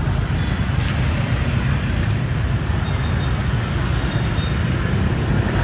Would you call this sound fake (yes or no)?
no